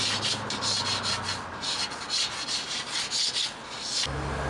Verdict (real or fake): real